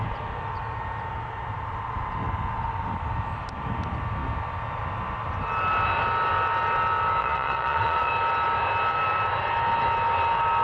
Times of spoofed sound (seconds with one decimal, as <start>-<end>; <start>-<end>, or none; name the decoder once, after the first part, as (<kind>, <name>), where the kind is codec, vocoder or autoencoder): 7.2-8.1 (vocoder, Vocos)